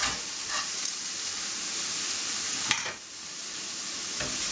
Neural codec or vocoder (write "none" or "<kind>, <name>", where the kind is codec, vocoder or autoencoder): vocoder, BigVGAN v2